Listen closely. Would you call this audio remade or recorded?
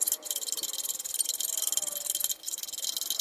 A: recorded